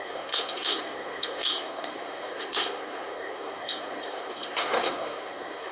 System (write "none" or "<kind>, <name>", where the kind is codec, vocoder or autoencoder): codec, SNAC